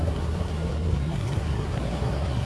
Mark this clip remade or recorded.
remade